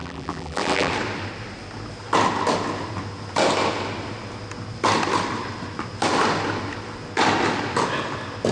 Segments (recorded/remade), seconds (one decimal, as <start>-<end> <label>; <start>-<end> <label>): 0.0-0.9 remade; 0.9-8.5 recorded